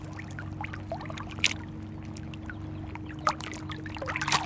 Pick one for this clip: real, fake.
real